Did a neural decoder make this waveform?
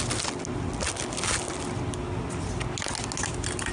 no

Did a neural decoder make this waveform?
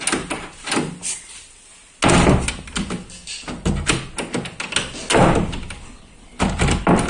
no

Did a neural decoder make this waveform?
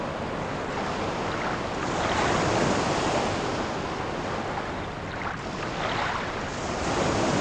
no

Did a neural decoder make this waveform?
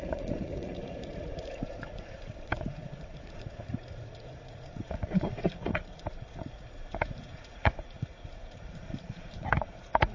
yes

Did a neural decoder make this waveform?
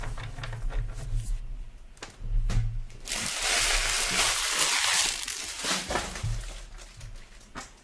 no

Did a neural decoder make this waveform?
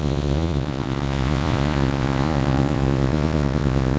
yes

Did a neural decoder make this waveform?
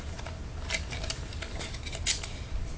no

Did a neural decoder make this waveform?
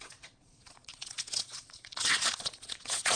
yes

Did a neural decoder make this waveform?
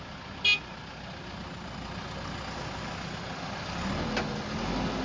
no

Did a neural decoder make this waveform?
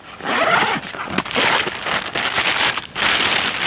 no